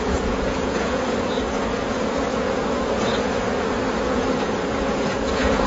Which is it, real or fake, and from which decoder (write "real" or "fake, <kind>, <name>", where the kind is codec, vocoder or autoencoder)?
fake, vocoder, Vocos